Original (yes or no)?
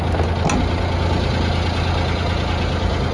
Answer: yes